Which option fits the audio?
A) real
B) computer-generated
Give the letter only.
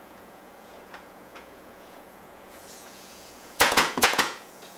B